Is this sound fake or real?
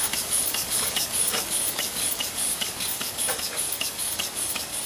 fake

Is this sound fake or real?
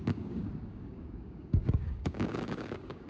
fake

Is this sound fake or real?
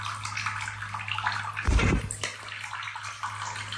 real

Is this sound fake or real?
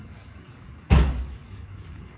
fake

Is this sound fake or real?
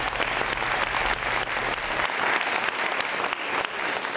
real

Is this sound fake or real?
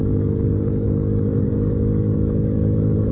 fake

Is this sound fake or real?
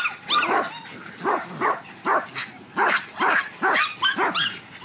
real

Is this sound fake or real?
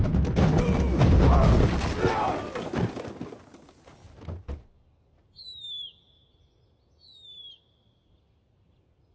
real